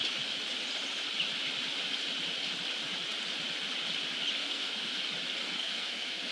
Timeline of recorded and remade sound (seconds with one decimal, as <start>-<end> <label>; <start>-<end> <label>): 0.0-4.4 recorded; 4.4-5.0 remade; 5.0-5.4 recorded; 5.4-6.3 remade